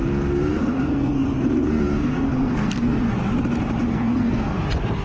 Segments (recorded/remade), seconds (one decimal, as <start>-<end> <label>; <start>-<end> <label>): 0.0-3.0 remade; 3.0-3.9 recorded; 3.9-4.6 remade; 4.6-5.0 recorded